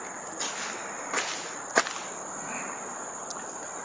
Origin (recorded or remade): recorded